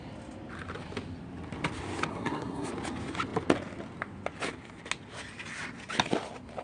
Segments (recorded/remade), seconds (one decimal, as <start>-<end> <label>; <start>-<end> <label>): 0.0-2.1 recorded; 2.1-2.7 remade; 2.7-6.6 recorded